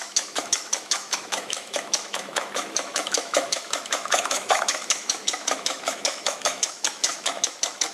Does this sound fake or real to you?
fake